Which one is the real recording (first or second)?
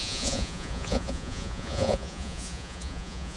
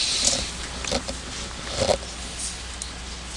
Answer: second